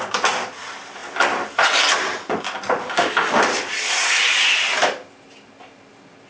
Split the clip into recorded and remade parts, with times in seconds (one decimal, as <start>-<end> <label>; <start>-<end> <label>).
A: 0.0-2.8 recorded; 2.8-3.4 remade; 3.4-6.3 recorded